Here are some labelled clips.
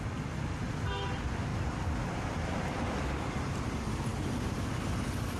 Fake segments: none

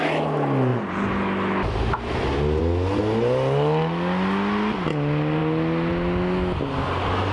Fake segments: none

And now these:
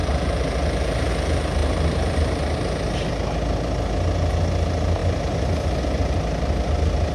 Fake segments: 1.6-3.1 (vocoder, BigVGAN v2)

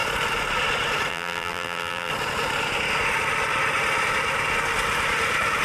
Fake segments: 1.1-2.1 (vocoder, BigVGAN v2)